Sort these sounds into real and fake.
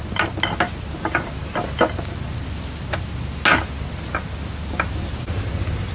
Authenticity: real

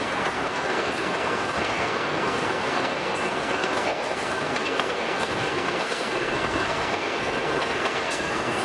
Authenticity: fake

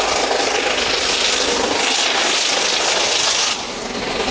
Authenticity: real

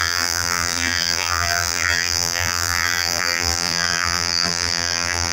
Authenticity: fake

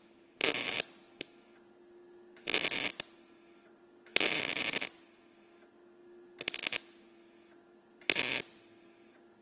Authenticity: real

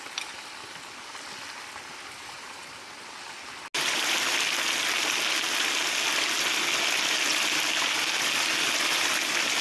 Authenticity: real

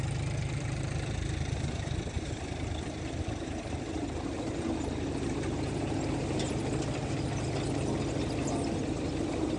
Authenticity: real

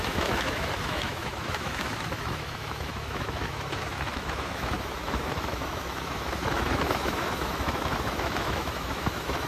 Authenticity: fake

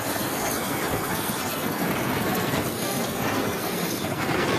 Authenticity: fake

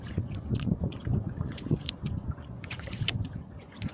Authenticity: fake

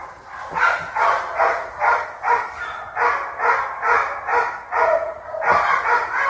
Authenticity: real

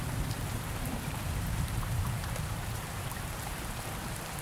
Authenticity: fake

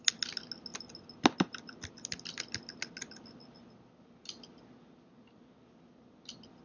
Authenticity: real